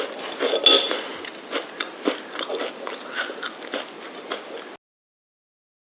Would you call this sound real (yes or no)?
yes